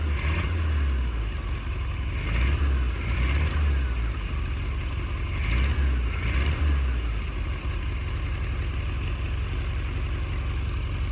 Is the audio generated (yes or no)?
no